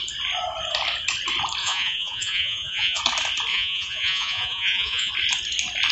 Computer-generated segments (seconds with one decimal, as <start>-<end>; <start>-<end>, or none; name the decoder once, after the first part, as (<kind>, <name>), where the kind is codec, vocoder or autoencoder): 1.6-3.0 (vocoder, Vocos); 3.5-5.1